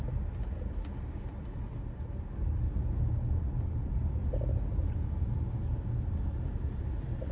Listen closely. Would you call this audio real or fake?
real